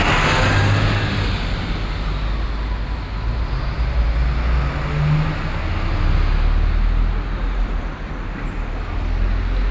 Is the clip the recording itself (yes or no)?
yes